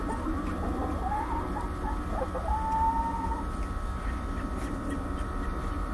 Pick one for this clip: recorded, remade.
recorded